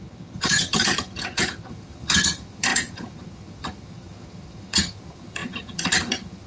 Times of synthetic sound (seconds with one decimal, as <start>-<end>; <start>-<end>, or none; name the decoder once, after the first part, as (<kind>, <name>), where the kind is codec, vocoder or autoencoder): 0.0-6.5 (vocoder, HiFi-GAN)